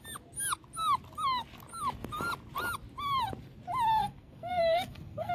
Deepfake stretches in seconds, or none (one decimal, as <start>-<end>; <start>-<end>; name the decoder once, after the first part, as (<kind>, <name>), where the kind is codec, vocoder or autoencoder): 4.0-5.3 (codec, SNAC)